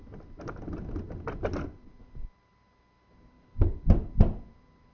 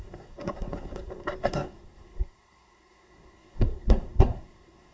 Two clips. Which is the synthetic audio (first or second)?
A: second